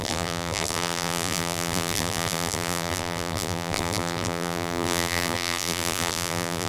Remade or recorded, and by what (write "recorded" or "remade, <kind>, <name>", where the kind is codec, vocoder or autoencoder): remade, vocoder, BigVGAN v2